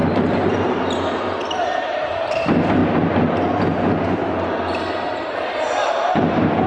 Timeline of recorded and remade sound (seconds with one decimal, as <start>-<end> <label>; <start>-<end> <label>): 0.0-6.7 remade